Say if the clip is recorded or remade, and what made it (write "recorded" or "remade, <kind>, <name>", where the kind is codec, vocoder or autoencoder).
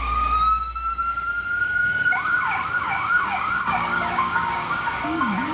remade, codec, DAC